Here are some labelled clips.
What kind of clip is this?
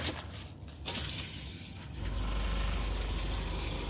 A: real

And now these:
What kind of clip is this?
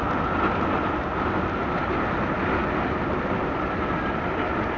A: real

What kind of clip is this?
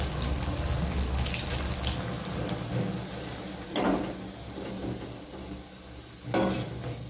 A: real